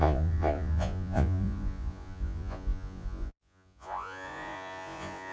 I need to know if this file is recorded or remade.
remade